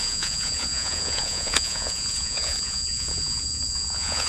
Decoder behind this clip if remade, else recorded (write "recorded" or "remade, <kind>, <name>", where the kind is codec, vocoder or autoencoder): remade, vocoder, Vocos